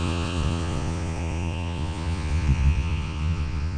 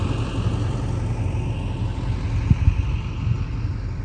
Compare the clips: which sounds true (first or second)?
second